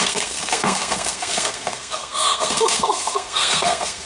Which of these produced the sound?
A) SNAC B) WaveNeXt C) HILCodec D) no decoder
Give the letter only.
A